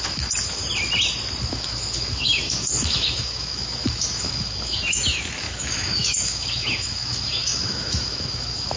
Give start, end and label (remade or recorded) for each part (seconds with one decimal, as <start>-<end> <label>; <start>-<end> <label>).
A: 0.0-0.6 remade; 0.6-1.5 recorded; 1.5-8.8 remade